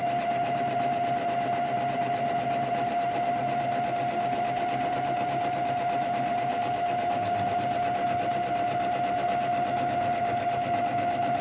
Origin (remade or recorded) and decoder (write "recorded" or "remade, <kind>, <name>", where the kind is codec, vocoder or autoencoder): recorded